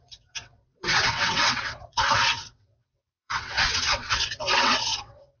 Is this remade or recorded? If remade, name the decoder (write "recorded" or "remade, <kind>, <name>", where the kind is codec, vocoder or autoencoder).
remade, vocoder, WaveNeXt